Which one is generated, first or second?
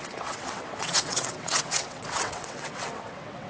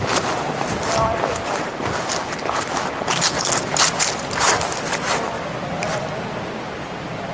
first